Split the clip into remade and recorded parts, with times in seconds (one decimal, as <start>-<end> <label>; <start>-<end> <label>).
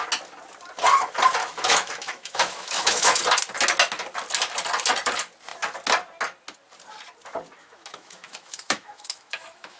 0.0-1.4 recorded; 1.4-3.2 remade; 3.2-7.6 recorded; 7.6-9.8 remade